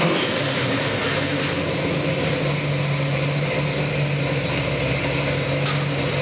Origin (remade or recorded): recorded